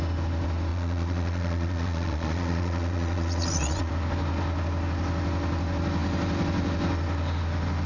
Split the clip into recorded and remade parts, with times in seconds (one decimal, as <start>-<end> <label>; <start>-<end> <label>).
0.0-0.7 recorded; 0.7-3.9 remade; 3.9-7.9 recorded

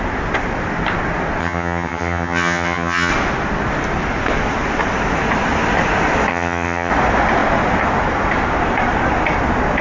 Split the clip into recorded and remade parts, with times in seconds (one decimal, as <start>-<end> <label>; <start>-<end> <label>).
0.0-1.4 recorded; 1.4-3.1 remade; 3.1-6.3 recorded; 6.3-6.9 remade; 6.9-9.8 recorded

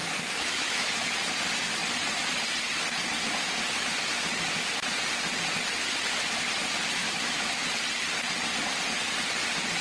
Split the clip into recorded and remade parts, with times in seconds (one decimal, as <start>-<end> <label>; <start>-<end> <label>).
0.0-0.9 remade; 0.9-7.0 recorded; 7.0-7.7 remade; 7.7-9.8 recorded

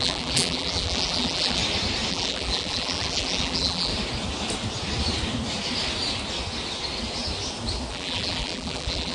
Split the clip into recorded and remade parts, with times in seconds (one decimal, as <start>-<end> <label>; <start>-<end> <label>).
0.0-1.6 remade; 1.6-2.1 recorded; 2.1-3.9 remade; 3.9-7.9 recorded; 7.9-9.1 remade

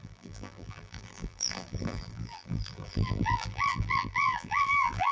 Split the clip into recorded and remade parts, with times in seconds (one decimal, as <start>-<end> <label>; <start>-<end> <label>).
0.0-5.1 remade